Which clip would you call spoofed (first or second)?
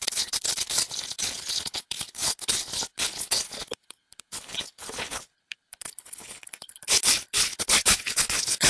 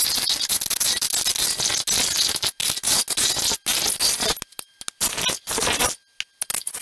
first